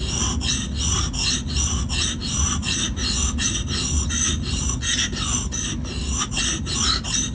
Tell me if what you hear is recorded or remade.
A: recorded